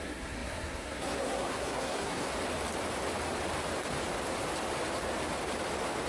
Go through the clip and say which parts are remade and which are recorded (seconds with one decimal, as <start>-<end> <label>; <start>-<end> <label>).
0.0-2.3 remade; 2.3-6.1 recorded